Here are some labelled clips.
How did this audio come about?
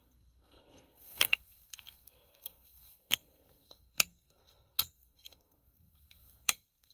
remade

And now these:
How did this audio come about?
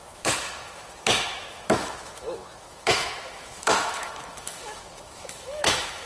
remade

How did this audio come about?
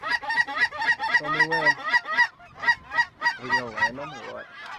recorded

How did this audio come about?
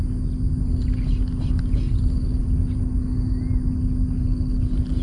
recorded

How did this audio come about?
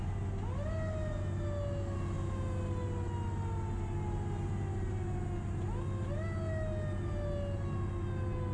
recorded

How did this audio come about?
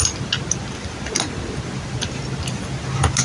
recorded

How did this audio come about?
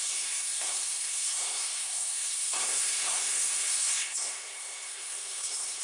remade